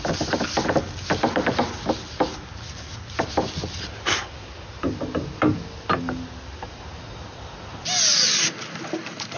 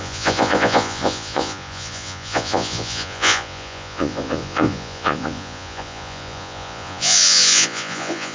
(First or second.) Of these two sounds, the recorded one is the first